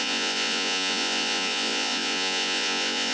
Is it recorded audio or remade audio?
remade